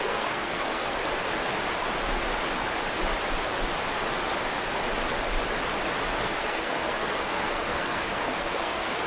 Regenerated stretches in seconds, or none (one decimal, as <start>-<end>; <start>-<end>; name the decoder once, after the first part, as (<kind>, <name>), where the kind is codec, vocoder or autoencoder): 0.0-1.0 (codec, SNAC); 6.2-9.1